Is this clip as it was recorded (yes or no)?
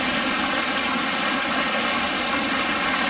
yes